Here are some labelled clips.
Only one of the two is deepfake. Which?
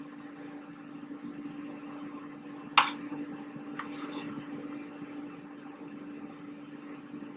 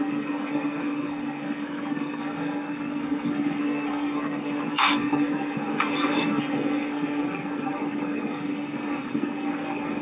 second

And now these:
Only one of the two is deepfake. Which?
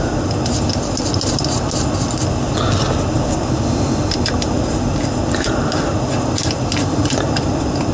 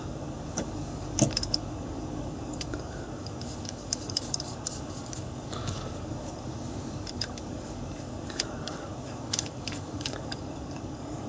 second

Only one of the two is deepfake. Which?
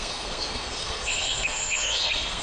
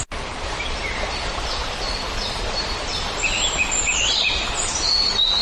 first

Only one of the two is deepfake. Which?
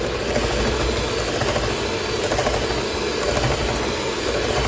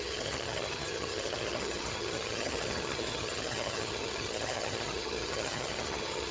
second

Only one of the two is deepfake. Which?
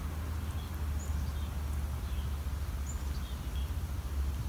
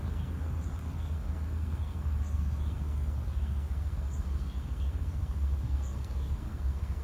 second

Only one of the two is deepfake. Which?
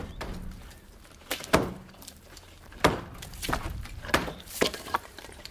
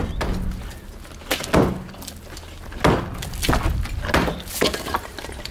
first